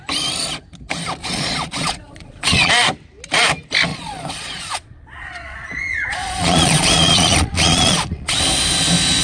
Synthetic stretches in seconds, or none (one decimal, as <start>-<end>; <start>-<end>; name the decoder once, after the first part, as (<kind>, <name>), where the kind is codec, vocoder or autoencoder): 1.2-2.7 (vocoder, Vocos); 3.9-8.4